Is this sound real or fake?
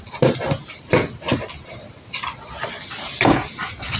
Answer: real